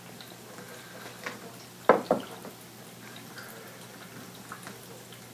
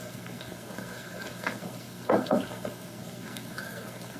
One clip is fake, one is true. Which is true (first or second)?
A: first